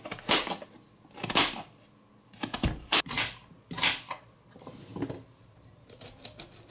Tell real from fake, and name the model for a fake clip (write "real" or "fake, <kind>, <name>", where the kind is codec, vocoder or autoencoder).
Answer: real